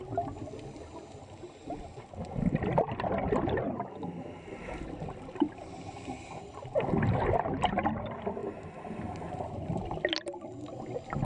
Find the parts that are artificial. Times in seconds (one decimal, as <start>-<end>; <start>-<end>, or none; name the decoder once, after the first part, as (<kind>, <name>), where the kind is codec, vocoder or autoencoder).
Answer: 8.4-9.8 (vocoder, BigVGAN v2)